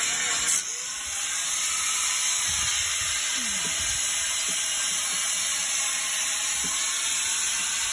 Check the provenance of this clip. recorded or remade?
recorded